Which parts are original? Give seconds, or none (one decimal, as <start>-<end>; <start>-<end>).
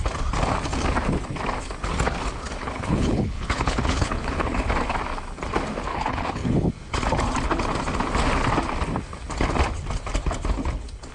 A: 0.0-2.6; 4.7-5.9; 6.7-11.1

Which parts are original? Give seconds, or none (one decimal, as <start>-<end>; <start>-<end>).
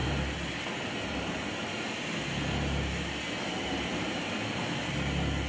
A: 0.0-5.5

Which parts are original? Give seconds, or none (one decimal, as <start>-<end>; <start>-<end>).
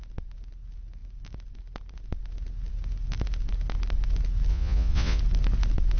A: 0.0-4.5; 5.2-6.0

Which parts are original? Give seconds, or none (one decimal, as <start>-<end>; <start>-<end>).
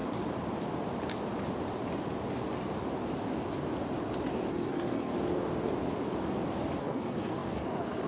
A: 0.0-4.5; 5.1-6.8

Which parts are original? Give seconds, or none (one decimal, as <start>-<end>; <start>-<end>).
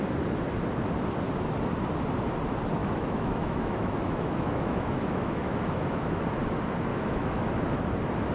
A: 0.0-2.8; 6.2-6.9; 7.5-8.3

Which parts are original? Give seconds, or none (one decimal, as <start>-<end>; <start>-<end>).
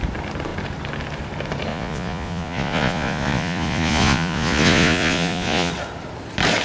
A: 0.0-1.7; 5.7-6.6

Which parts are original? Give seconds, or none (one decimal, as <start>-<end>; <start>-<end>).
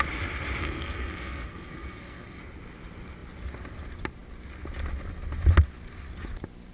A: 0.0-0.6; 2.4-6.7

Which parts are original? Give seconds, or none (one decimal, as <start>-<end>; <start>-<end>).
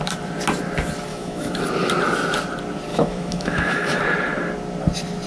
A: 0.0-1.1; 1.6-2.9; 4.0-5.3